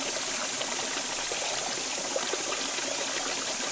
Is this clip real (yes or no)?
yes